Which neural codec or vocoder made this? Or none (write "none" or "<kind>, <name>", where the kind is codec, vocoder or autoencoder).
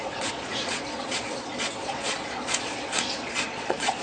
vocoder, Vocos